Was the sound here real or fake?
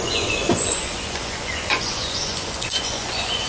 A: fake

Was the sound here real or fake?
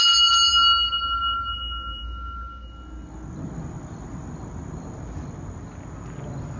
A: real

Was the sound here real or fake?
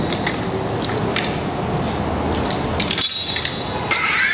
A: real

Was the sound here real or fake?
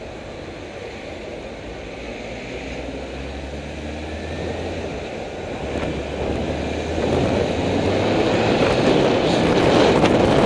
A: real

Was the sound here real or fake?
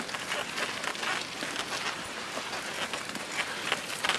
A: real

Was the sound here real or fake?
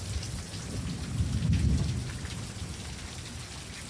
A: real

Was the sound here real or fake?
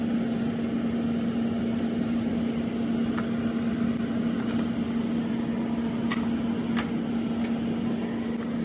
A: real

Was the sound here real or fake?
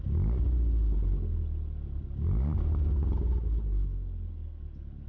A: real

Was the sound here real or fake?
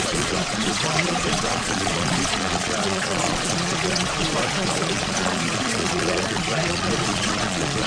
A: fake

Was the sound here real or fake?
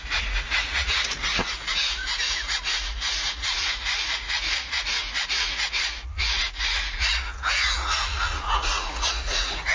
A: fake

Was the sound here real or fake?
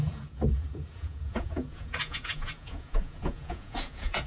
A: fake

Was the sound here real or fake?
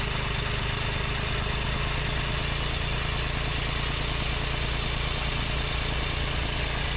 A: real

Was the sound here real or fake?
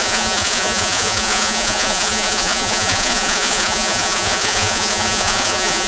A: fake